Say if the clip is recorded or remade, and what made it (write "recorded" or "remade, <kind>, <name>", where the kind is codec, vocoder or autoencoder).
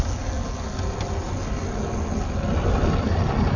recorded